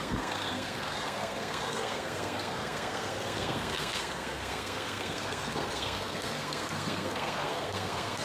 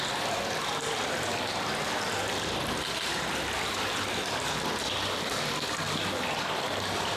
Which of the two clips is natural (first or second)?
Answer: second